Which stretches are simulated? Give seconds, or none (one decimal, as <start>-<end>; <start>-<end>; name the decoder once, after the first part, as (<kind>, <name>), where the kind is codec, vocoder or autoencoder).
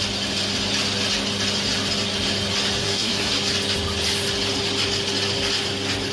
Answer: 2.8-3.3 (codec, SNAC)